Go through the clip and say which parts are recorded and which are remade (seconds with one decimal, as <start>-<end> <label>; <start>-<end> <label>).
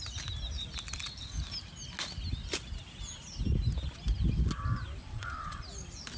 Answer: 0.0-5.0 recorded; 5.0-5.6 remade; 5.6-6.2 recorded